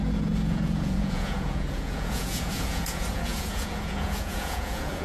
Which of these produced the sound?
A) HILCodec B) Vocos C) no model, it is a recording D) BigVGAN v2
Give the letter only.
B